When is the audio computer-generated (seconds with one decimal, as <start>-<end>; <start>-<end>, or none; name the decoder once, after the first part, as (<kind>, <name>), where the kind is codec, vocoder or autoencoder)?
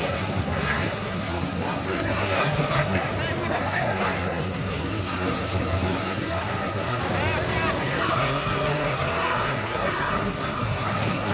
0.0-3.1 (codec, SNAC); 3.6-7.0; 7.8-11.3